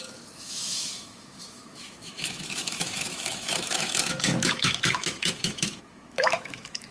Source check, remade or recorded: remade